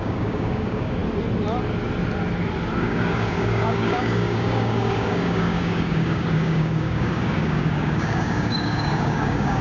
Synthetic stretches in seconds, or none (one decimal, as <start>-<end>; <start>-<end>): 0.0-1.0; 2.8-9.6